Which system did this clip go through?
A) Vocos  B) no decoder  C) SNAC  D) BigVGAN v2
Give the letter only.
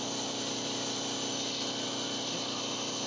B